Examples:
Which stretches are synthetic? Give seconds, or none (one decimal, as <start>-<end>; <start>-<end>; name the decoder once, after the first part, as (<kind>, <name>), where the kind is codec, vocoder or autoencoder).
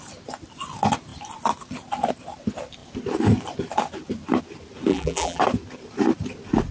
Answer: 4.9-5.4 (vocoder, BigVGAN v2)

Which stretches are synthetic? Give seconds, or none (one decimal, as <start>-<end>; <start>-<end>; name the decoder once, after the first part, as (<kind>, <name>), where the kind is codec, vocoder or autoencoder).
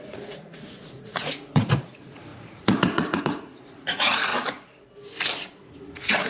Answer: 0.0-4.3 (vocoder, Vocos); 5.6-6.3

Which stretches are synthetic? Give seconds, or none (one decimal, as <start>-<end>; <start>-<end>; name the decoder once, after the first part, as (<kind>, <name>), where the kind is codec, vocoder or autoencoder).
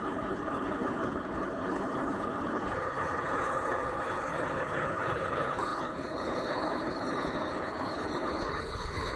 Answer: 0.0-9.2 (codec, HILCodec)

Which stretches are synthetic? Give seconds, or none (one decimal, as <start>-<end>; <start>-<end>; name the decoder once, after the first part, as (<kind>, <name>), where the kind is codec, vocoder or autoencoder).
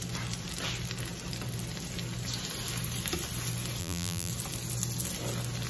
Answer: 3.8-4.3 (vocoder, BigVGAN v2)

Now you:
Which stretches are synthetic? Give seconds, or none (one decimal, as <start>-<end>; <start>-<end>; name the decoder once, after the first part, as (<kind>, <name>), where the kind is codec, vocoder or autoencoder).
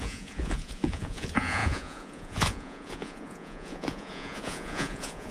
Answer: 0.0-5.3 (vocoder, Vocos)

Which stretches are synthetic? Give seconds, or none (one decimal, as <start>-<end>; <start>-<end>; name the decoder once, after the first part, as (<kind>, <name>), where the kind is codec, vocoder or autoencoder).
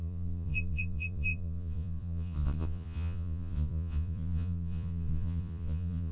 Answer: 0.0-6.1 (vocoder, Vocos)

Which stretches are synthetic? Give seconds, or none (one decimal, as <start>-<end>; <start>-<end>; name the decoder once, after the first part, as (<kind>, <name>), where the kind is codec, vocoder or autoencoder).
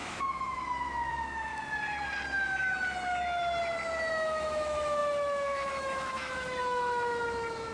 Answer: 0.0-1.5 (autoencoder, DAC-VAE); 4.1-7.7